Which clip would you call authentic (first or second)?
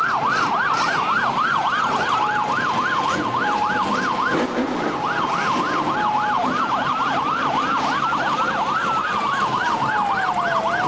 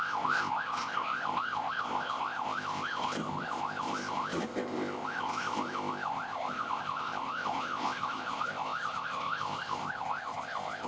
first